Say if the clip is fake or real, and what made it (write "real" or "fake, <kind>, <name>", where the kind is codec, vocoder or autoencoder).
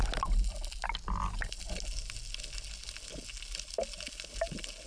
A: real